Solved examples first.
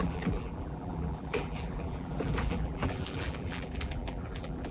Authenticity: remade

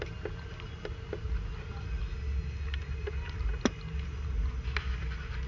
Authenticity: recorded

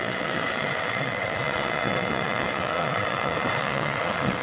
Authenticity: remade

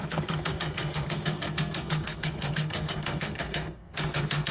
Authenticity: remade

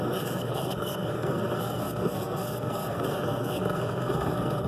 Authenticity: remade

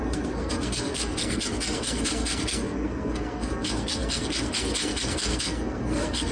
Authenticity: remade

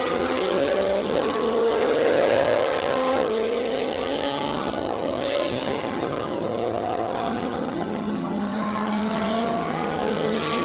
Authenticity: remade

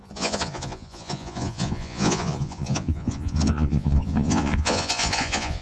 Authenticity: remade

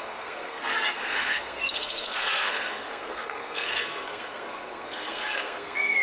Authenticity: remade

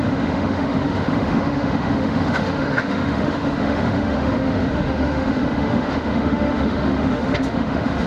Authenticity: remade